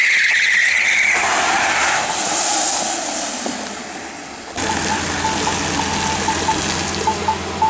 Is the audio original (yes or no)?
yes